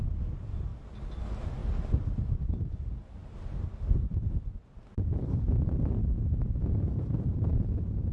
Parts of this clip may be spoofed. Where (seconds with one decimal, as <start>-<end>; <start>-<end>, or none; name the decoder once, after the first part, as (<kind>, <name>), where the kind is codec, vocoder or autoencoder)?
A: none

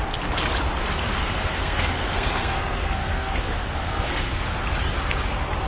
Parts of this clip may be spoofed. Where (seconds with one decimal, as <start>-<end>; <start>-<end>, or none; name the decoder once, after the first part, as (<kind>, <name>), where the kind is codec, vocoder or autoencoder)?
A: 1.2-4.6 (codec, SNAC)

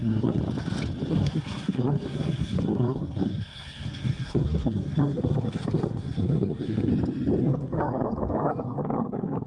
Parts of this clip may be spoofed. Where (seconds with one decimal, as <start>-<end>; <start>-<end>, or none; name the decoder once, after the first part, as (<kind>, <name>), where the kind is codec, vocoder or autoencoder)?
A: 0.0-0.4 (codec, SNAC); 1.1-6.9; 7.4-9.5

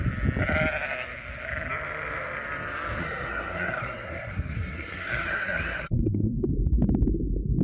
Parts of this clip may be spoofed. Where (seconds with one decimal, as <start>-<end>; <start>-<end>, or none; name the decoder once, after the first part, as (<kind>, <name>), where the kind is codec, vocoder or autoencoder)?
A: 3.0-6.5 (codec, SNAC)

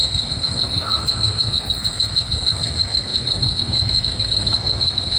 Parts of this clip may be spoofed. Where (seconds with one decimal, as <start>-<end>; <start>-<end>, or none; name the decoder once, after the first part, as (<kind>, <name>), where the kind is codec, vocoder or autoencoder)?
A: 0.0-5.2 (codec, SNAC)